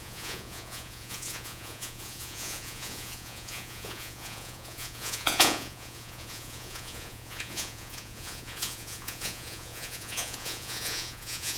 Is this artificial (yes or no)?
yes